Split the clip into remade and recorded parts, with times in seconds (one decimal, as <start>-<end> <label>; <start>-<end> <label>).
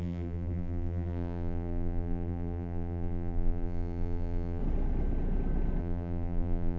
0.0-4.6 remade; 4.6-5.8 recorded; 5.8-6.8 remade